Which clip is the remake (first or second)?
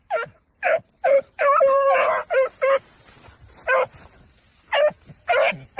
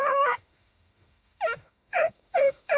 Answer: second